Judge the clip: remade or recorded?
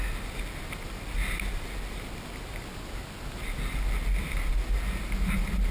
recorded